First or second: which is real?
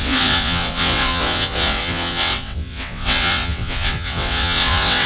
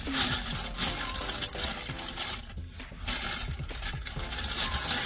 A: second